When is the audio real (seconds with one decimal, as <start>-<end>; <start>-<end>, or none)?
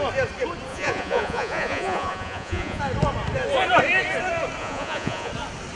0.0-0.7; 2.8-4.6; 5.3-5.8